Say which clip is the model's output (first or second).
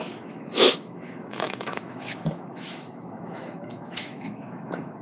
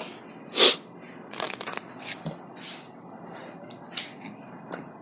first